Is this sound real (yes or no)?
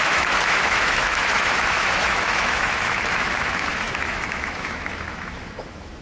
no